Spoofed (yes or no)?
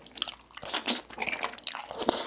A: no